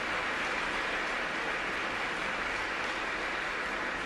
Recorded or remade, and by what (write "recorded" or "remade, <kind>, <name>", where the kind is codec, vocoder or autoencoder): recorded